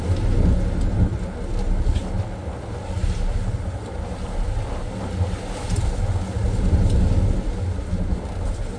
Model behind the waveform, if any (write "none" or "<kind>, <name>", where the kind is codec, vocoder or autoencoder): none